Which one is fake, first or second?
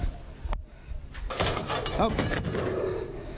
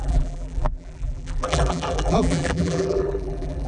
second